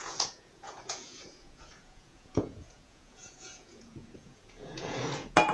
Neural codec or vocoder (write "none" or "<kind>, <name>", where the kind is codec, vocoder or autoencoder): vocoder, Vocos